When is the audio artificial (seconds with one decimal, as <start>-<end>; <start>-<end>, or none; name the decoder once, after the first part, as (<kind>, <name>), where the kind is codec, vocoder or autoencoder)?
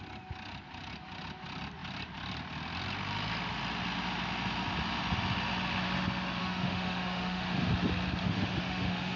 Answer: 6.4-7.7 (autoencoder, DAC-VAE); 8.2-9.2